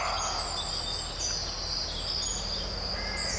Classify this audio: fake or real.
real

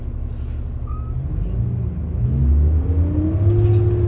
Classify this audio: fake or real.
real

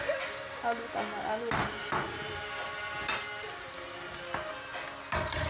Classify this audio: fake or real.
real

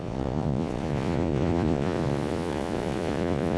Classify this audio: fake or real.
fake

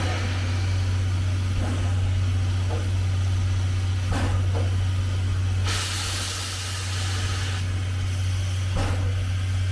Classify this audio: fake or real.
real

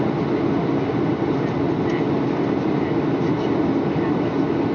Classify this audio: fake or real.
real